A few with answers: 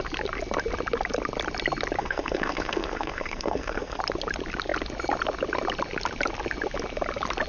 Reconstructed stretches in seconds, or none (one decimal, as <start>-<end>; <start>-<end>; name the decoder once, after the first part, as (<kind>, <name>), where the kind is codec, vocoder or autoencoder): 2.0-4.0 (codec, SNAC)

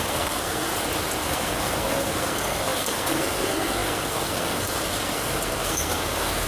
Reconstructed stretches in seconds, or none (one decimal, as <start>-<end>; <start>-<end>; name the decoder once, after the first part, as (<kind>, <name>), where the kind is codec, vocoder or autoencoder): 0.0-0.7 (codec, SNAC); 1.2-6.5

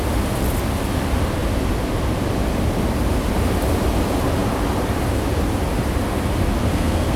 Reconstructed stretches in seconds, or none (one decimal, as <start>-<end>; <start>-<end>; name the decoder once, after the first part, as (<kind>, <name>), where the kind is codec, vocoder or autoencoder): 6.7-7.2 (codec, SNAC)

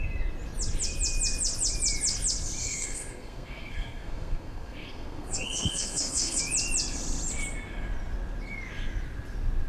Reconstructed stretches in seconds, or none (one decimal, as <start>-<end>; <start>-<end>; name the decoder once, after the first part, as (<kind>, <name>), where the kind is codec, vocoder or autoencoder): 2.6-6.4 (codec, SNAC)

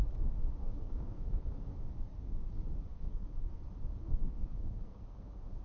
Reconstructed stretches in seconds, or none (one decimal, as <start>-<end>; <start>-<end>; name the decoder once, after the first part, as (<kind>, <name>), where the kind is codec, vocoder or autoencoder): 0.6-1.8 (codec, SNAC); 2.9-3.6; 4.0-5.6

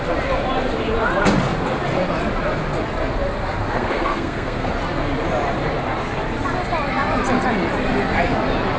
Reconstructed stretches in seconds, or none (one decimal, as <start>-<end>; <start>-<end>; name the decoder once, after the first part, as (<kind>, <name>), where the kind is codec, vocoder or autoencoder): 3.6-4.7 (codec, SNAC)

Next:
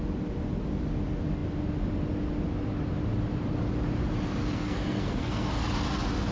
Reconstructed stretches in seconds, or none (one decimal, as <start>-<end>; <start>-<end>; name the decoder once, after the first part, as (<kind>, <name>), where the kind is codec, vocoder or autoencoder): 4.4-5.5 (codec, SNAC)

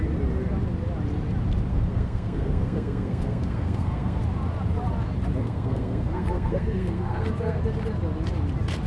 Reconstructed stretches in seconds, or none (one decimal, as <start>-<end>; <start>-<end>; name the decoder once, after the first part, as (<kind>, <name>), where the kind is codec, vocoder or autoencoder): 1.7-4.2 (codec, SNAC); 5.4-7.6